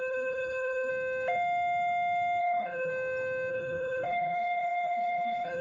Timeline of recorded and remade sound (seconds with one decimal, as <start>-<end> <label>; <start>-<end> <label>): 0.0-0.9 remade; 0.9-2.4 recorded; 2.4-2.9 remade; 2.9-3.5 recorded; 3.5-5.6 remade